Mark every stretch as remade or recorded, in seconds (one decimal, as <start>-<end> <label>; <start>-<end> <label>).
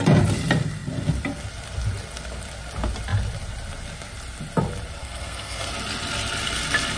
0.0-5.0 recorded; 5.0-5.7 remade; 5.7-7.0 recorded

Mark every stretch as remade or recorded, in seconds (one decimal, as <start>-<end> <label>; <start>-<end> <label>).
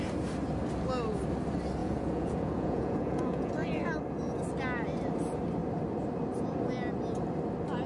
0.0-1.8 recorded; 1.8-3.5 remade; 3.5-7.9 recorded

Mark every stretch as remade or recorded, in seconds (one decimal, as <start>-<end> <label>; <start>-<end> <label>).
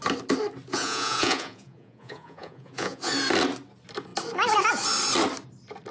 0.0-0.7 recorded; 0.7-3.1 remade; 3.1-5.9 recorded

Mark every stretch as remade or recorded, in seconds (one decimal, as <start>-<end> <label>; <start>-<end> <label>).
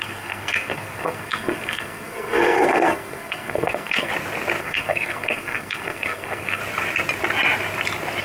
0.0-4.1 remade; 4.1-4.6 recorded; 4.6-6.6 remade; 6.6-8.2 recorded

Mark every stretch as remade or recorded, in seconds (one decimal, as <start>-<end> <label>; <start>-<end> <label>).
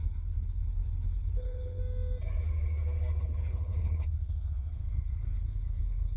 0.0-1.8 remade; 1.8-3.2 recorded; 3.2-6.2 remade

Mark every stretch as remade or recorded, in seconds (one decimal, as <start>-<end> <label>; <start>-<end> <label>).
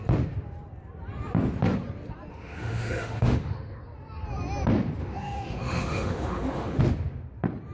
0.0-2.3 recorded; 2.3-3.8 remade; 3.8-5.0 recorded; 5.0-6.8 remade; 6.8-7.7 recorded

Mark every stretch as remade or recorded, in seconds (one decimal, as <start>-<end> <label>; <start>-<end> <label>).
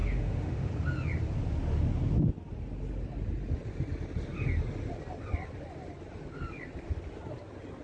0.0-0.7 remade; 0.7-7.8 recorded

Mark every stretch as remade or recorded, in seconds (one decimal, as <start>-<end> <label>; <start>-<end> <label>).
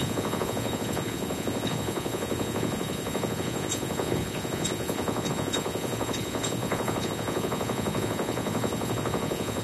0.0-9.6 remade